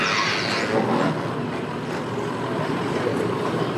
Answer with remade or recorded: recorded